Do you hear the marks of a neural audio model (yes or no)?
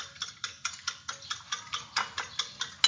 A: no